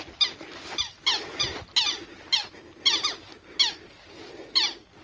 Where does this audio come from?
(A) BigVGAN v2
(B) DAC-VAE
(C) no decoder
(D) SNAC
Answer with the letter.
C